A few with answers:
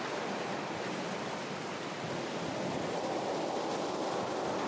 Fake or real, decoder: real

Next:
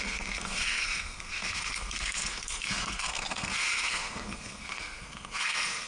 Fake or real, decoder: fake, codec, SNAC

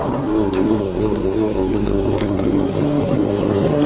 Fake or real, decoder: fake, codec, SNAC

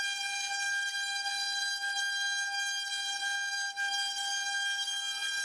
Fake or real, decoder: real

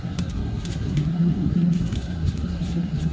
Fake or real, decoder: fake, codec, SNAC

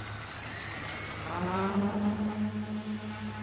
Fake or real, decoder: real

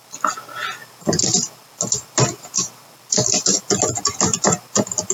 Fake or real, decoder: real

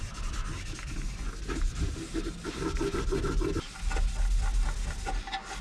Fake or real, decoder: real